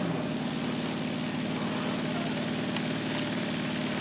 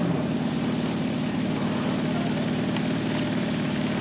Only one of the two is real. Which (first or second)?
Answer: first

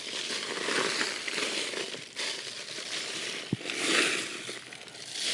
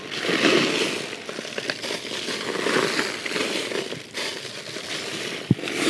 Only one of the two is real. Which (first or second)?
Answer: second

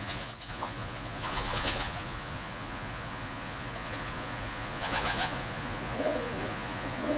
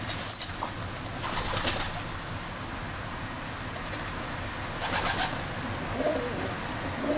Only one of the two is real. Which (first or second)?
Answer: second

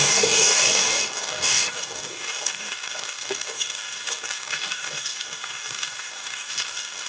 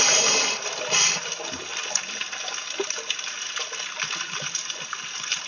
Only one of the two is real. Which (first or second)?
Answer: second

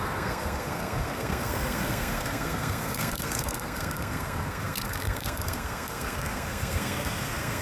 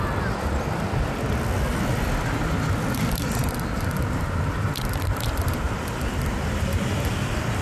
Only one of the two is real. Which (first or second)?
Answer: second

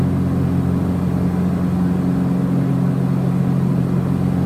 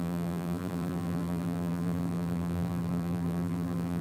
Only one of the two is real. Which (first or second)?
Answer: first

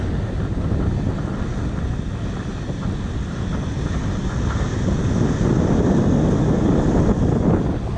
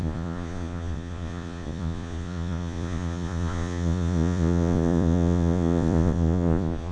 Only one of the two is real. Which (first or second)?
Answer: first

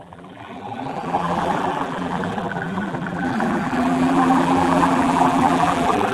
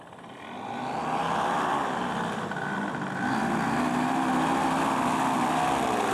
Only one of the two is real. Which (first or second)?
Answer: second